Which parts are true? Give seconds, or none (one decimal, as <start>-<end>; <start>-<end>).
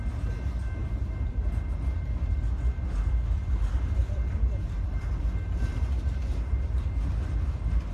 0.0-7.9